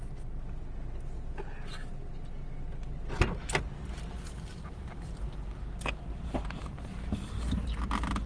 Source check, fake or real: real